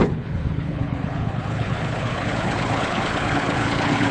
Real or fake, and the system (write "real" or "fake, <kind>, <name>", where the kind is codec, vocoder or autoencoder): fake, codec, HILCodec